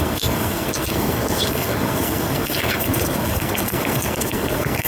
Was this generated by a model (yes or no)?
yes